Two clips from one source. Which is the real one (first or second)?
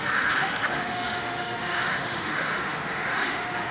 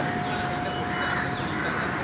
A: second